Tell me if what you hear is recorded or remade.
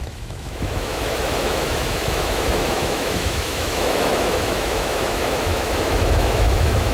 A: remade